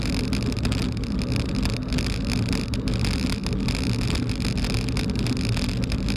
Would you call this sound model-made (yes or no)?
no